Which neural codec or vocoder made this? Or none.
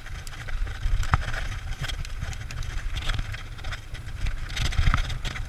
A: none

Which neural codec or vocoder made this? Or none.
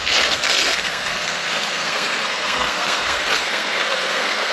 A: codec, SNAC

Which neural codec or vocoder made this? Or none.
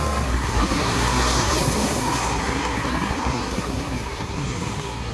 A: codec, SNAC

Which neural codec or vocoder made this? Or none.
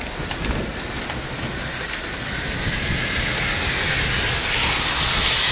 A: none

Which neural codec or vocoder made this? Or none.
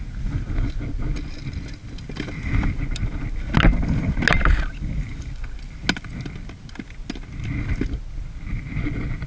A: none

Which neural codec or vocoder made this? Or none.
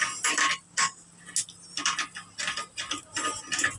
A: none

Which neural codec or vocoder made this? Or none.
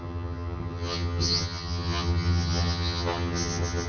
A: vocoder, HiFi-GAN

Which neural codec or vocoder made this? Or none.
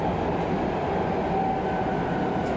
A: none